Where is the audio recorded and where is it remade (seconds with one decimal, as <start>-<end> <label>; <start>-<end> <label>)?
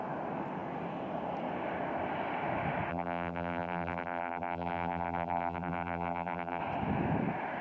0.0-2.9 recorded; 2.9-6.6 remade; 6.6-7.6 recorded